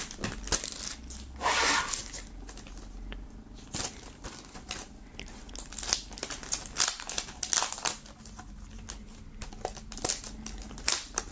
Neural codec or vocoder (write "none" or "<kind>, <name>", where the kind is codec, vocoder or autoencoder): none